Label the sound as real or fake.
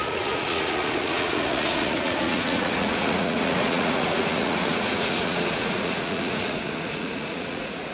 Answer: fake